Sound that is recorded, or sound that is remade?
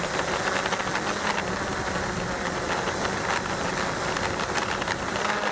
recorded